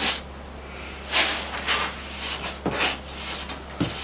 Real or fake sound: real